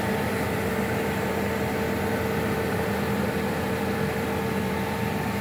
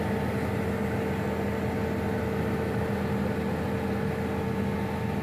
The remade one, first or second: first